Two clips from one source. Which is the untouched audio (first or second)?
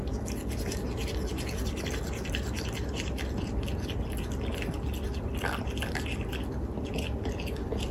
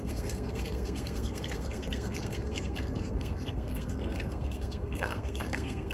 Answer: first